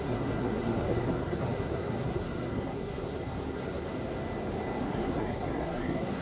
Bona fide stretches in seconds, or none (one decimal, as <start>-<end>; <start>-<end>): 3.9-4.8